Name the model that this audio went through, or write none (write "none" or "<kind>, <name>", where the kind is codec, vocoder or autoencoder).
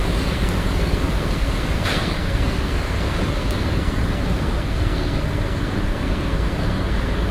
codec, SNAC